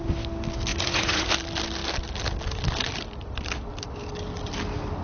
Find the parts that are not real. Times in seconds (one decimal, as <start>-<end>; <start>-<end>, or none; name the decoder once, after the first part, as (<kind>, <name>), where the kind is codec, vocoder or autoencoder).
0.7-1.3 (vocoder, Vocos)